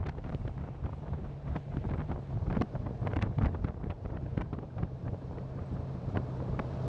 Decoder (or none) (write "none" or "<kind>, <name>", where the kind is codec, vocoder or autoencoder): vocoder, BigVGAN v2